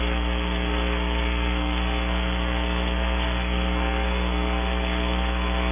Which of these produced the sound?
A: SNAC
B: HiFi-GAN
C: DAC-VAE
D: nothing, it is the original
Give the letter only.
A